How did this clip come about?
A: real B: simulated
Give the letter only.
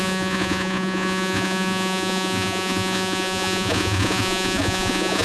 B